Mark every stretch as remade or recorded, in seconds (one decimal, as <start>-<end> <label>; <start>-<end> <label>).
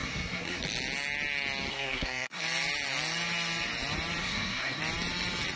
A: 0.0-0.6 remade; 0.6-1.7 recorded; 1.7-2.4 remade; 2.4-4.2 recorded; 4.2-4.8 remade; 4.8-5.6 recorded